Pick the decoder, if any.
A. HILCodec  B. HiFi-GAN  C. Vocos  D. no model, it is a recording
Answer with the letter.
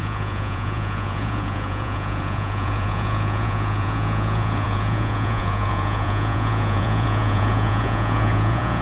C